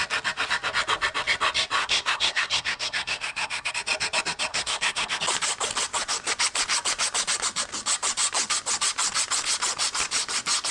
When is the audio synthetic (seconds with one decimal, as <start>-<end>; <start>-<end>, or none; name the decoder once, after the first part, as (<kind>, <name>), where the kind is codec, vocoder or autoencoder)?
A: 1.8-3.7 (codec, SNAC); 4.5-5.2